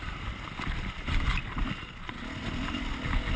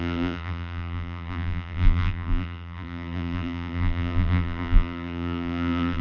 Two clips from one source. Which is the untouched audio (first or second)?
first